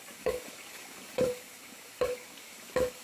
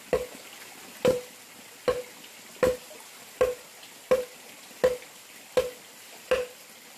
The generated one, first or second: first